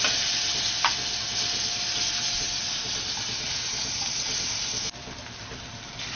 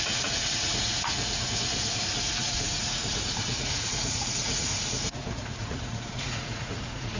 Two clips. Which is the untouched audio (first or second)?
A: first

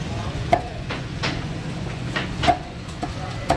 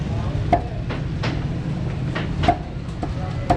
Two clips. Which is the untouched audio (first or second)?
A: second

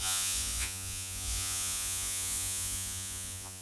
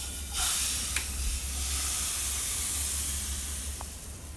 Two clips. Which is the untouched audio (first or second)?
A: second